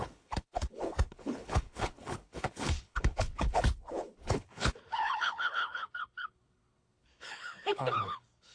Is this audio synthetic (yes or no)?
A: yes